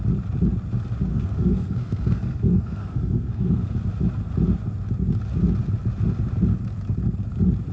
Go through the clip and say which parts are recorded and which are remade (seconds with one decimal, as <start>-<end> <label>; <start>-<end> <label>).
0.0-1.1 recorded; 1.1-3.7 remade; 3.7-7.7 recorded